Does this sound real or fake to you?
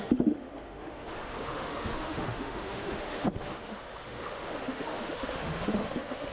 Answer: fake